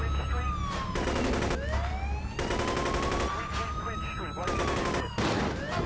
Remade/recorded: recorded